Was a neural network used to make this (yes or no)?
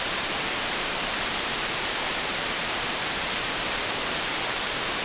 yes